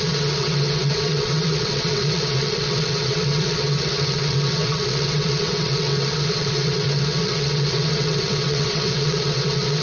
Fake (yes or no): yes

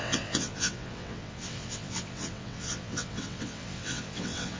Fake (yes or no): yes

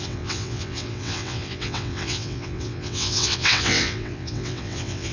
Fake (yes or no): yes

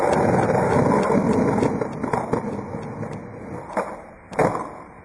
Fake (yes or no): no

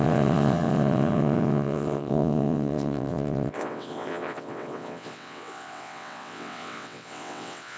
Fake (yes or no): yes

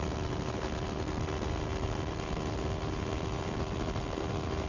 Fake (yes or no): no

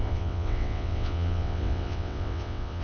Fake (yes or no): yes